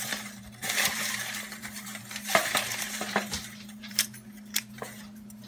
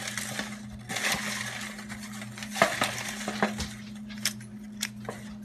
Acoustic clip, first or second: second